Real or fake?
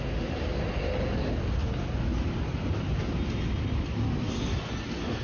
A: real